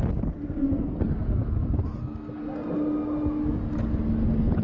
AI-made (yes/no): no